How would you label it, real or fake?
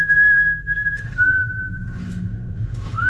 fake